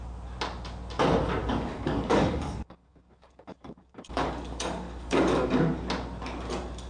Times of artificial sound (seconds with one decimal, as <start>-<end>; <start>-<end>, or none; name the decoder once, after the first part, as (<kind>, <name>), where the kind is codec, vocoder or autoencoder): 1.4-5.5 (codec, DAC)